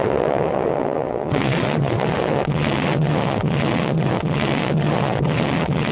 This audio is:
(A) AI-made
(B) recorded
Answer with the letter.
A